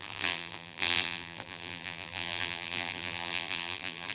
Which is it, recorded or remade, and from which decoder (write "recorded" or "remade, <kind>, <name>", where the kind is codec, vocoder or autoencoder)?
remade, vocoder, BigVGAN v2